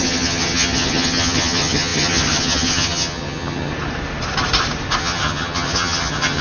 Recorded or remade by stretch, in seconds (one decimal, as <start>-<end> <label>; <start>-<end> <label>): 0.0-3.7 remade; 3.7-5.0 recorded; 5.0-6.4 remade